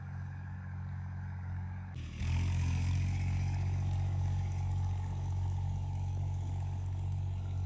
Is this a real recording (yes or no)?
no